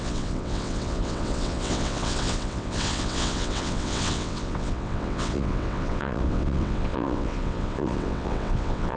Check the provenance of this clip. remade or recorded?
remade